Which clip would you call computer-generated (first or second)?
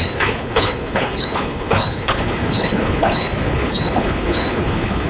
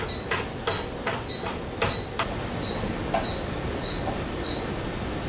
first